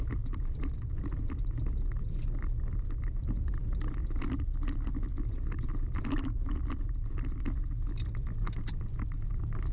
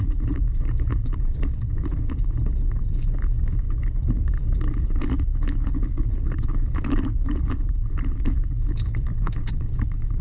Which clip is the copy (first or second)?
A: second